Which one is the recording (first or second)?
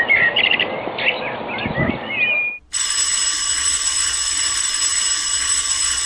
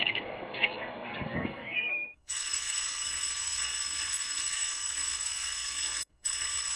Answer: first